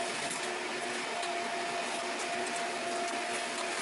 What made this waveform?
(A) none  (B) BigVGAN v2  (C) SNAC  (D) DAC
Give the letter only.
A